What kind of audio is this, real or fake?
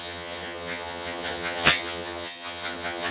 fake